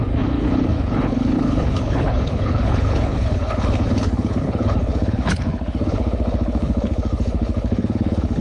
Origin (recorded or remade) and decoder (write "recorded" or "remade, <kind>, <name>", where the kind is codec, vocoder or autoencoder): remade, codec, HILCodec